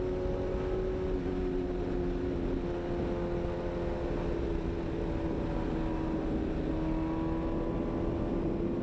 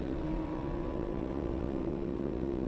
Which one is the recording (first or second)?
first